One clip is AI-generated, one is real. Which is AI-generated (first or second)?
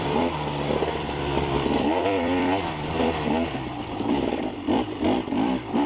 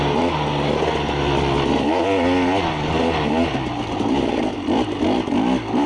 first